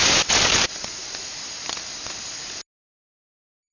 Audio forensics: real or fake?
real